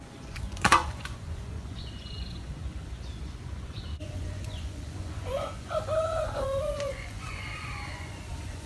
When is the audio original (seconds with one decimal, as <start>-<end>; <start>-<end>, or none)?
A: none